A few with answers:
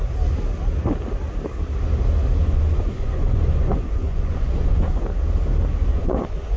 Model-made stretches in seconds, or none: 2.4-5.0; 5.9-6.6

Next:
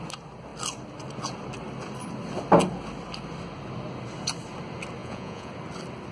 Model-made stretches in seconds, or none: 5.0-5.5

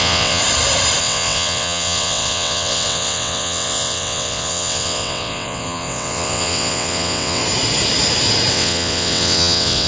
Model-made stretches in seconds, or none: 0.0-0.4; 1.0-7.4; 8.5-9.9

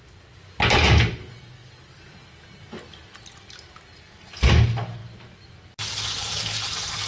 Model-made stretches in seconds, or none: none

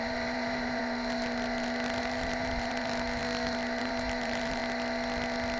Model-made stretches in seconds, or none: 0.0-0.8; 2.0-3.2; 3.8-4.6